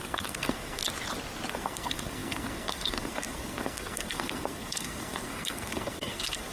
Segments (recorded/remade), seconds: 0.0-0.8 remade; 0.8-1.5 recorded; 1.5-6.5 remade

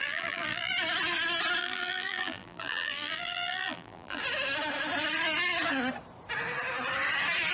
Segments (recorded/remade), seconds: 0.0-0.7 remade; 0.7-1.6 recorded; 1.6-4.2 remade; 4.2-7.5 recorded

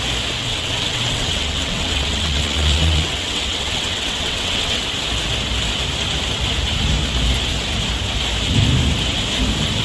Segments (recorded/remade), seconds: 0.0-0.4 recorded; 0.4-4.8 remade; 4.8-9.8 recorded

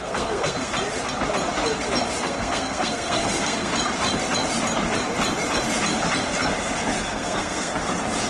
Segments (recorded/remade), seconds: 0.0-0.7 remade; 0.7-2.2 recorded; 2.2-3.7 remade; 3.7-7.1 recorded; 7.1-7.7 remade; 7.7-8.3 recorded

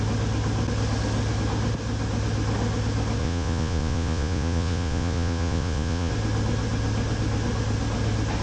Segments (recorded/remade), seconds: 0.0-3.2 recorded; 3.2-6.1 remade; 6.1-8.4 recorded

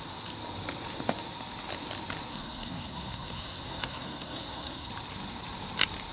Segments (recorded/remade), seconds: 0.0-2.3 recorded; 2.3-4.9 remade; 4.9-6.1 recorded